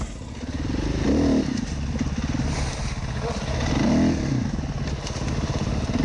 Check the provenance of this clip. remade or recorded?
recorded